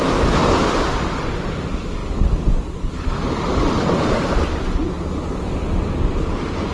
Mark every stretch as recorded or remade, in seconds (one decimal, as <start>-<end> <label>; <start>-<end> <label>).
0.0-6.7 recorded